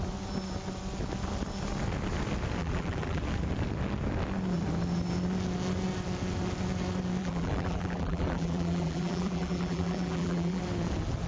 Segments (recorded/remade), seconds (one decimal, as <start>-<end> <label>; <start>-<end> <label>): 0.0-2.6 recorded; 2.6-3.2 remade; 3.2-7.2 recorded; 7.2-10.6 remade; 10.6-11.3 recorded